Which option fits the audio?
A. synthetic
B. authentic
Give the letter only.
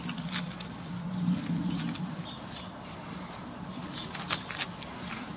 B